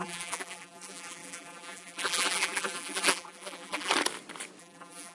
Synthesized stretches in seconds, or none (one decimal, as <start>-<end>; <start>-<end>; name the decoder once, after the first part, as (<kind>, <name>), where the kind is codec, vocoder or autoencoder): 0.0-3.9 (vocoder, BigVGAN v2); 4.6-5.1